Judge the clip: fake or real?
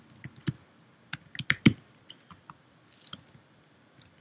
real